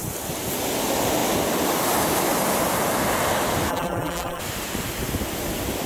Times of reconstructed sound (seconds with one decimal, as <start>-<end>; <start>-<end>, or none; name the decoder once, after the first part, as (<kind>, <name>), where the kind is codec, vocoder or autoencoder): 3.7-4.4 (vocoder, BigVGAN v2)